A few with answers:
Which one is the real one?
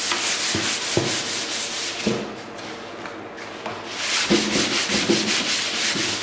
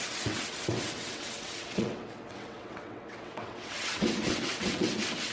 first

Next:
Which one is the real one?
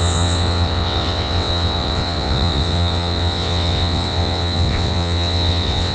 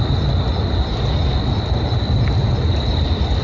second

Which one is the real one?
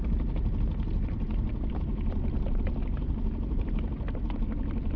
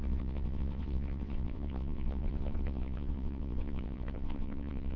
first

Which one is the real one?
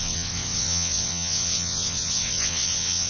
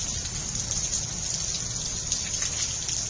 second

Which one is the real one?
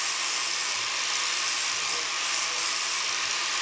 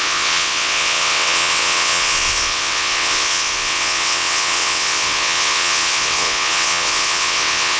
first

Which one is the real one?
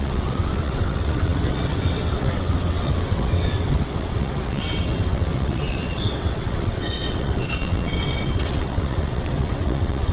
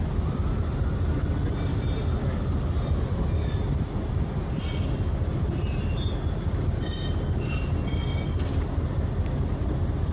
second